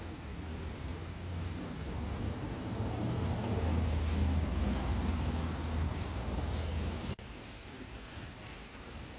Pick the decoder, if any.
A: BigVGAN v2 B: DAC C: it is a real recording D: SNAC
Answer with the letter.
B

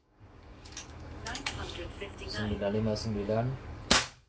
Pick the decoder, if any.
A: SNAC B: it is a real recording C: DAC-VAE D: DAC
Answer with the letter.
D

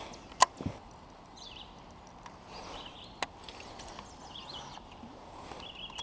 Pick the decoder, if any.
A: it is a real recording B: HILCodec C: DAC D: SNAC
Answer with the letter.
A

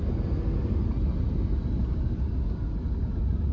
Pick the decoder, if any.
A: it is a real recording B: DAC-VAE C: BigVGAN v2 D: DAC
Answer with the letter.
A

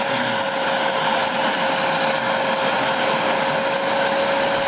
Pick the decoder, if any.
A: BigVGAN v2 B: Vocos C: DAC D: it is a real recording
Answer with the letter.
D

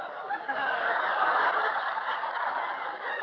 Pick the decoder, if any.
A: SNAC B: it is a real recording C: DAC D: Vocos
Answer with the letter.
C